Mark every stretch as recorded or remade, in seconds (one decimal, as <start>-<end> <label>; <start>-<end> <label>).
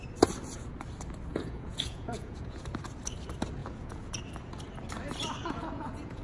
0.0-1.3 recorded; 1.3-2.6 remade; 2.6-3.6 recorded; 3.6-4.1 remade; 4.1-5.4 recorded; 5.4-6.2 remade